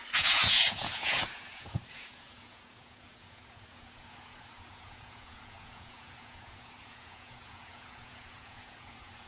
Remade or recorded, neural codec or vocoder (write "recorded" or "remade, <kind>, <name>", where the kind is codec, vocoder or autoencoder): remade, vocoder, Vocos